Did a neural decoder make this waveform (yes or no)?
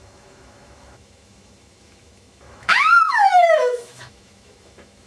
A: yes